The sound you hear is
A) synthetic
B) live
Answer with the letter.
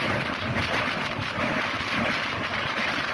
B